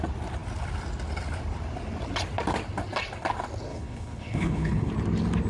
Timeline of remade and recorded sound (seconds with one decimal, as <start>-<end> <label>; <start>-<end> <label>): 0.0-3.7 recorded; 3.7-4.9 remade; 4.9-5.5 recorded